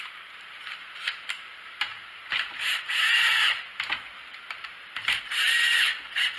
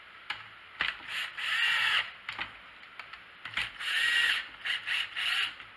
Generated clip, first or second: first